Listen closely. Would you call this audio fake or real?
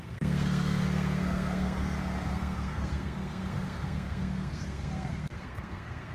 fake